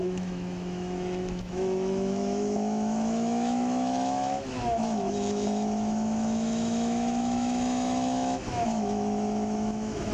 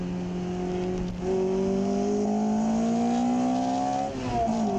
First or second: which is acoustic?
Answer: second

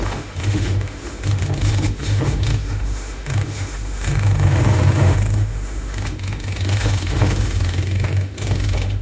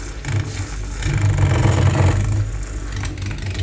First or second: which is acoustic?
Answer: second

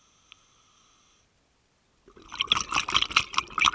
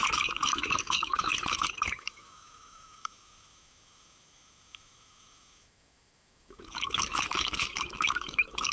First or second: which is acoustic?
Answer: first